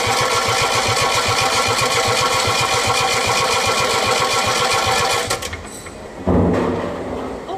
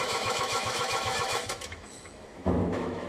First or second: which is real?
first